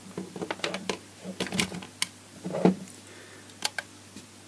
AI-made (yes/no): no